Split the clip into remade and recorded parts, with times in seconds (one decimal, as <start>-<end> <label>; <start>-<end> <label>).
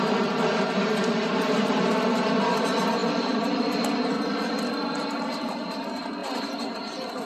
0.0-7.3 recorded